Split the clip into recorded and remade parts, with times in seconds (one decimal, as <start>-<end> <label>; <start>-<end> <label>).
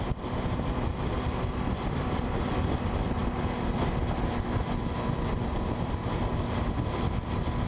0.0-7.7 recorded